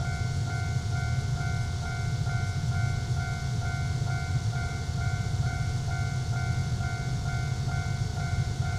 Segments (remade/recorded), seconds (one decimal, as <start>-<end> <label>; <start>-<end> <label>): 0.0-4.3 recorded; 4.3-5.9 remade; 5.9-8.1 recorded; 8.1-8.8 remade